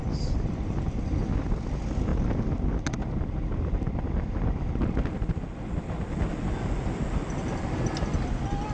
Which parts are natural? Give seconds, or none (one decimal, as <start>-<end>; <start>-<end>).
0.0-8.7